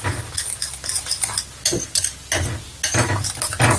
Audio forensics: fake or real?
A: real